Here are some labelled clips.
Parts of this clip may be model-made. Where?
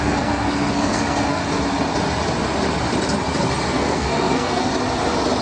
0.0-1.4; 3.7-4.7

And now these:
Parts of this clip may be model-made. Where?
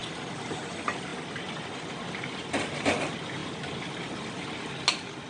none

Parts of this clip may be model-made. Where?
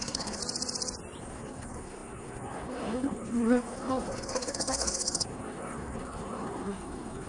0.0-0.4; 1.2-7.3